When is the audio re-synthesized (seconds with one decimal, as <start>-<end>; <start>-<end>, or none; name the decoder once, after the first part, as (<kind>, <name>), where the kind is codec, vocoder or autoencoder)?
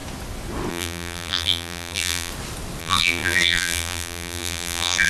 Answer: 0.7-2.3 (vocoder, BigVGAN v2); 2.8-5.1